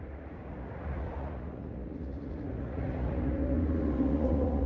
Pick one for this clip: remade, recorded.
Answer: remade